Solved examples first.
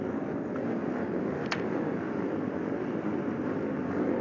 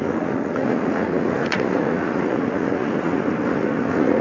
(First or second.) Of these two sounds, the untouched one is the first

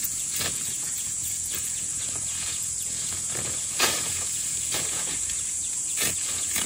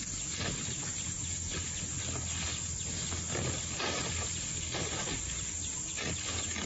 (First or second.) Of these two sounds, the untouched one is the second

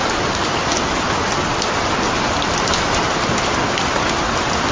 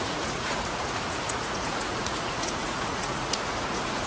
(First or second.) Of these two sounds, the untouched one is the first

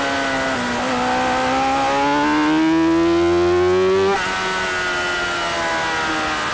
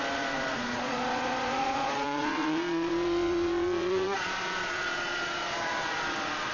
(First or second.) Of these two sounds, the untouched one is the first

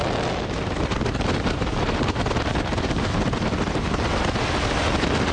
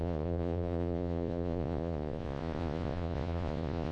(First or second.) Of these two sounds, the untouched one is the first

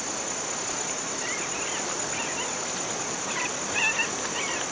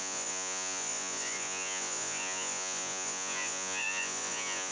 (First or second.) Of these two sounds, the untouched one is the first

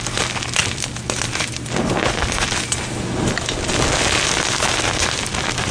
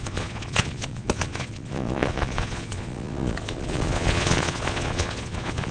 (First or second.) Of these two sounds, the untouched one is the first